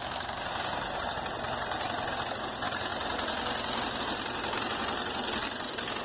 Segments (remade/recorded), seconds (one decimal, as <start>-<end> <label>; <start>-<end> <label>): 0.0-6.0 recorded